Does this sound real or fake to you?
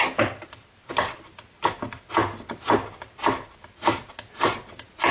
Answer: real